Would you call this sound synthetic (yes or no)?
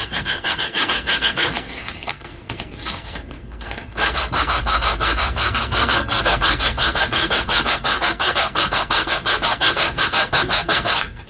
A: yes